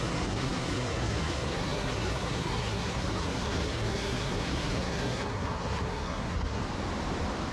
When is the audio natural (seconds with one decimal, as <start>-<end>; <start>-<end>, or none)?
6.6-7.5